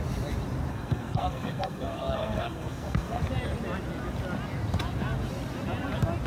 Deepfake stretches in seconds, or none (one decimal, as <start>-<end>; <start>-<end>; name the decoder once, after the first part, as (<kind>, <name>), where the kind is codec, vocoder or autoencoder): 0.7-3.2 (codec, SNAC)